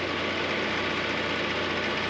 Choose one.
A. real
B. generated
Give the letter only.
A